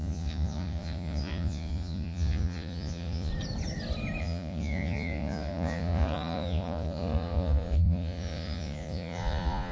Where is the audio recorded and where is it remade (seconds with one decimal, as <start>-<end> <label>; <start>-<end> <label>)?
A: 0.0-3.3 remade; 3.3-4.2 recorded; 4.2-9.7 remade